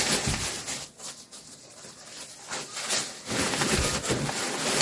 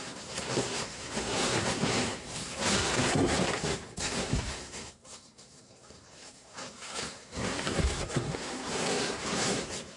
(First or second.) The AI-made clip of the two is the second